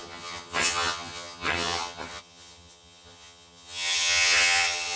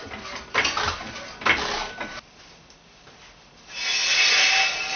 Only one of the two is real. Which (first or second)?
second